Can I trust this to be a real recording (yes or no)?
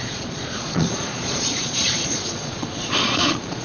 no